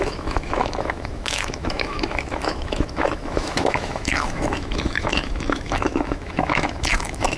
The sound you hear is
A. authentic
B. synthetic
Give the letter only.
B